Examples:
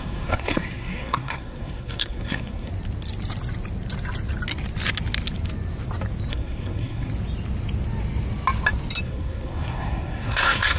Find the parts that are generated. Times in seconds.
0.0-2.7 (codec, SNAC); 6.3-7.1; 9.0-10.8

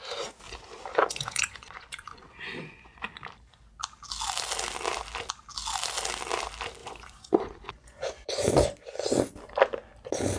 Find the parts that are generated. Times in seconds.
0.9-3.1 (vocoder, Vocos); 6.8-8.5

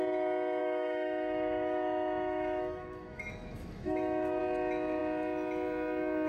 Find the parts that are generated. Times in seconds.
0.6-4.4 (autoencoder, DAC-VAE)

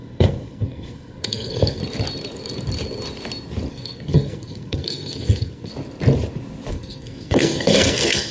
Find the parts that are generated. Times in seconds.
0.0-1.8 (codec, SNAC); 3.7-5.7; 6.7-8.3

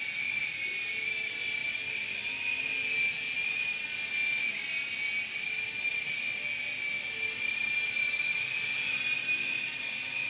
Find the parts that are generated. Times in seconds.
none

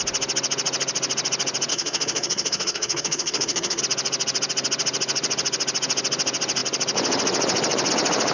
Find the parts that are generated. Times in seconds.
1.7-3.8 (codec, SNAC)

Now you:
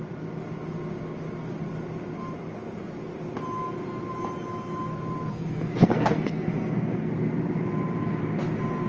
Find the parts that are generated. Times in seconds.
5.3-7.1 (codec, SNAC)